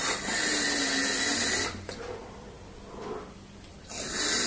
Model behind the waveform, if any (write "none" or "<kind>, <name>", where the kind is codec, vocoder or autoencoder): none